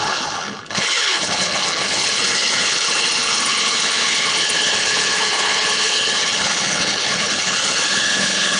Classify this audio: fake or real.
fake